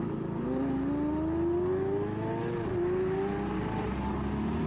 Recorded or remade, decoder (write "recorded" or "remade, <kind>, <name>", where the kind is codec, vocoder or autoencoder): recorded